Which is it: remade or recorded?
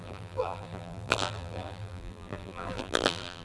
remade